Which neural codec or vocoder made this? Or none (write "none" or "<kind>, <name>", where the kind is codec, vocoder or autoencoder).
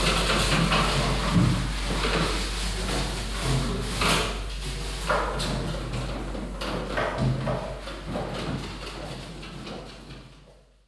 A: none